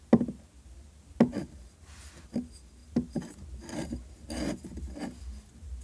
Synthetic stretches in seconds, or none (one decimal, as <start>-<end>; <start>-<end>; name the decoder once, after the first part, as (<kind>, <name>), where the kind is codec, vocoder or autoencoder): none